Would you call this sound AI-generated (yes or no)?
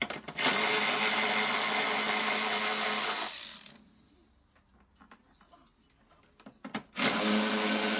no